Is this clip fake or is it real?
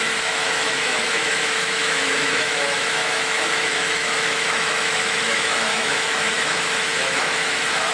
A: fake